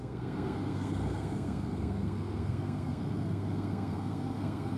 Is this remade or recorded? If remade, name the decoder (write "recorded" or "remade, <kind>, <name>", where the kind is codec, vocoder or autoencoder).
remade, codec, SNAC